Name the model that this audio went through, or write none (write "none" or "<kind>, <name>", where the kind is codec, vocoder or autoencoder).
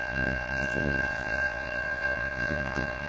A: vocoder, Vocos